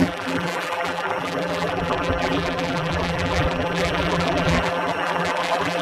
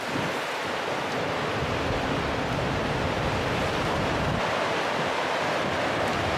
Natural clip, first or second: second